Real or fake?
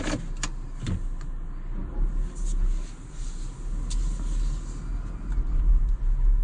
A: real